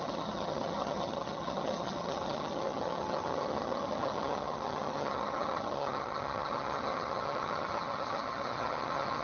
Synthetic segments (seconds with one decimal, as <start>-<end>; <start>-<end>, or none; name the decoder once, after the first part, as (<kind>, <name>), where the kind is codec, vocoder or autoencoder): 0.0-9.2 (vocoder, HiFi-GAN)